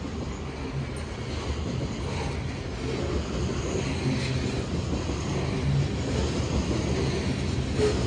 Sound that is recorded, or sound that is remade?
recorded